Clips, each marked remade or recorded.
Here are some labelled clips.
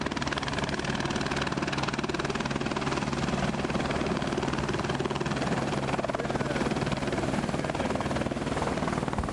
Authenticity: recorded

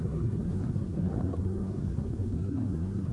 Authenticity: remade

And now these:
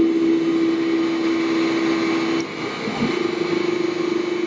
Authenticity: recorded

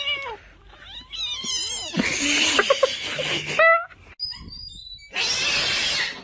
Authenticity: recorded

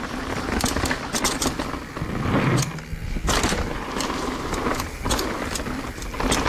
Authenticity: recorded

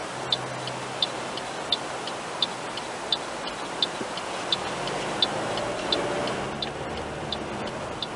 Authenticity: recorded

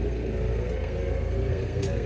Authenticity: remade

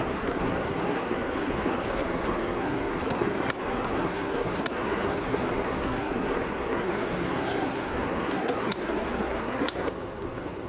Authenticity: remade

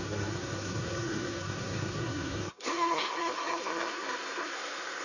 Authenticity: remade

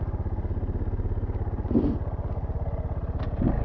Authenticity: recorded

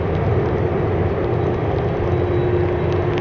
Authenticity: recorded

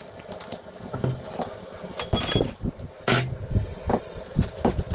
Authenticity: recorded